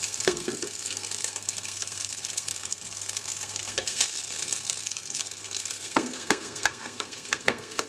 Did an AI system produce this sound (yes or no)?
yes